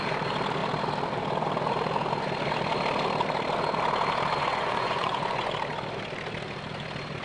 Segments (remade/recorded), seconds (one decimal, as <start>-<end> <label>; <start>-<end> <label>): 0.0-4.4 recorded; 4.4-5.5 remade; 5.5-7.2 recorded